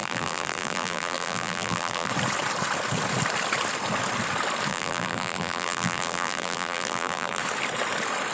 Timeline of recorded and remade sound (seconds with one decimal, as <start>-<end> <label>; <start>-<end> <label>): 0.0-2.1 remade; 2.1-4.7 recorded; 4.7-7.4 remade; 7.4-8.3 recorded